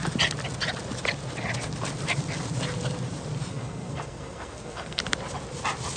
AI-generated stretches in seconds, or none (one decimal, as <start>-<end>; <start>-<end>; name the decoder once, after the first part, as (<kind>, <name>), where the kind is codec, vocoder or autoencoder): 3.5-5.0 (codec, SNAC)